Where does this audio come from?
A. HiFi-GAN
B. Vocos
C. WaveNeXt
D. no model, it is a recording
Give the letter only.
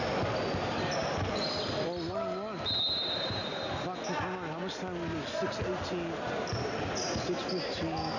D